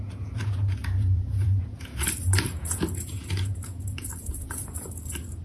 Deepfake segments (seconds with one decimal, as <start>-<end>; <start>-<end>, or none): 0.0-5.4